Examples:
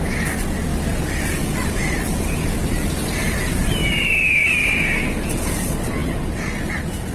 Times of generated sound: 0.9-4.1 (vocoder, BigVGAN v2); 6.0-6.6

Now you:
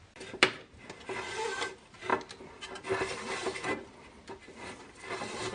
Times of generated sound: none

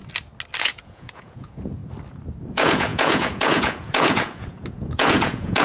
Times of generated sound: 0.6-1.8 (vocoder, Vocos); 2.5-5.6